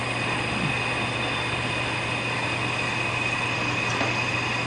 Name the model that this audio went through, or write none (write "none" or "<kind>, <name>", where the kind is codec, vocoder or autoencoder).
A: none